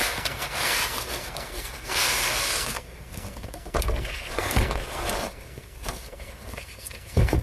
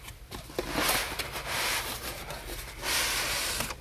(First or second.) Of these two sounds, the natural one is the second